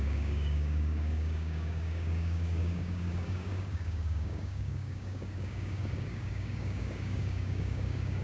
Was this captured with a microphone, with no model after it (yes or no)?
no